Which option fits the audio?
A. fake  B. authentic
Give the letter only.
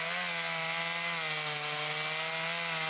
B